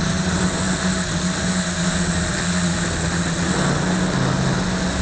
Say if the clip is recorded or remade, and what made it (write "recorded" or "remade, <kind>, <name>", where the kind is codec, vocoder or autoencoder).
recorded